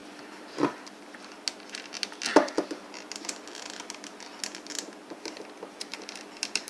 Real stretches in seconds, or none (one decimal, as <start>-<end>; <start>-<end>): 0.0-5.9